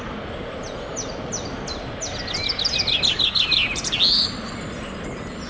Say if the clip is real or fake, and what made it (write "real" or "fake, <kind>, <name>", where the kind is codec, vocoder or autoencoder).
real